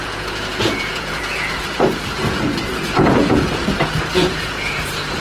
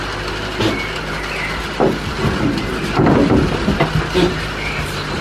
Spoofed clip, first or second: first